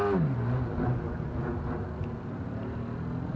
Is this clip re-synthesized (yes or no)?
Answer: no